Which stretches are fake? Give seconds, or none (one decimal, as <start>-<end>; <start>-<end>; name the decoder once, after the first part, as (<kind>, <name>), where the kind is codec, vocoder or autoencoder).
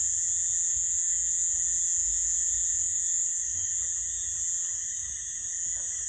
0.7-1.5 (autoencoder, DAC-VAE); 2.0-3.7